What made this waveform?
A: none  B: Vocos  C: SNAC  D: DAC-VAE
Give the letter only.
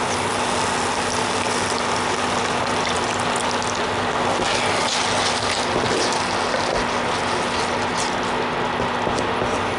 A